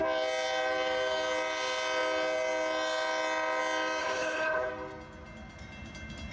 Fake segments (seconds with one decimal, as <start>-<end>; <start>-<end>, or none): 4.0-4.7